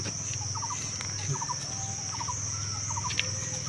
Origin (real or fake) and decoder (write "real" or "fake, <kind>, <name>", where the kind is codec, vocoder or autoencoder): real